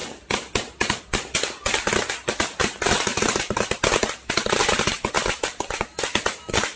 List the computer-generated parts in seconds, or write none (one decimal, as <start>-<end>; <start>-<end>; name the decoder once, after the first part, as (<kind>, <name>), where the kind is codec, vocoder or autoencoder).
3.1-3.8 (vocoder, BigVGAN v2)